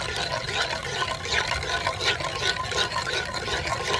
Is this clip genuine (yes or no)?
yes